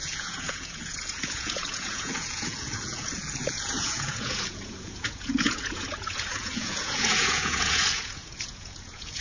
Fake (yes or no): yes